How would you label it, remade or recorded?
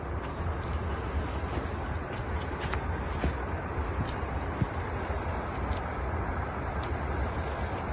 recorded